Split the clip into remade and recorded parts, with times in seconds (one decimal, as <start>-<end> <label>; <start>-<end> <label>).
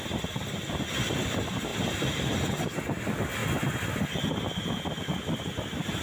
0.0-6.0 recorded